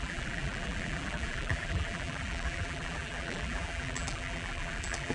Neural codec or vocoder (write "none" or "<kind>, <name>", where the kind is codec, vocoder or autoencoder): vocoder, BigVGAN v2